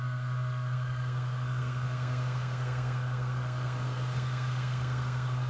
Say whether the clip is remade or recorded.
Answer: remade